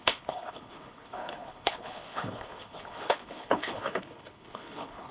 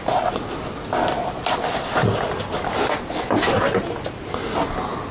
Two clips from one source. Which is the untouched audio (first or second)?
second